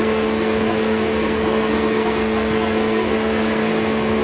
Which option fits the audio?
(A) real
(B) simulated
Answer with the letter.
B